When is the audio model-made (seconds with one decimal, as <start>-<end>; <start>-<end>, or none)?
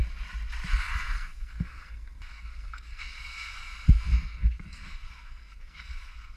0.7-6.4